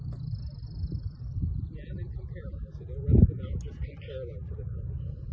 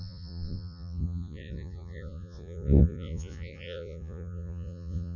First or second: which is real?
first